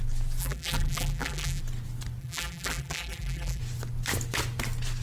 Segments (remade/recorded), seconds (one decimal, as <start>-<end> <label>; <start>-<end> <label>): 0.0-0.4 recorded; 0.4-1.6 remade; 1.6-2.2 recorded; 2.2-3.6 remade; 3.6-5.0 recorded